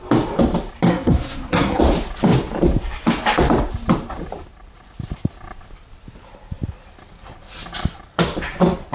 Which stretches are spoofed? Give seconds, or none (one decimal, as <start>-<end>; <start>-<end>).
0.9-1.8